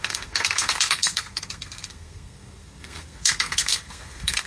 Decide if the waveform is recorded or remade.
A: remade